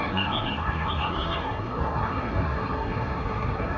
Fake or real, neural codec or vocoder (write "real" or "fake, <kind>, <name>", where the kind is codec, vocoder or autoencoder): fake, codec, SNAC